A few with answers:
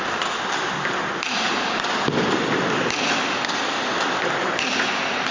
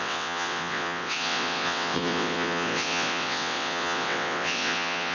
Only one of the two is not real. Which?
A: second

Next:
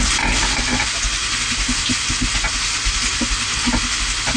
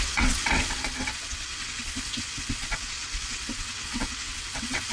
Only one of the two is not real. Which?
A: second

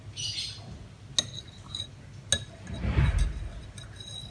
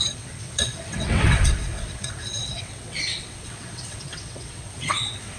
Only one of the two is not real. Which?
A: second